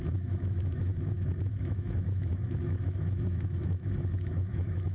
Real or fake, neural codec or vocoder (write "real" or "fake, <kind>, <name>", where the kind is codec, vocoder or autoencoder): fake, autoencoder, DAC-VAE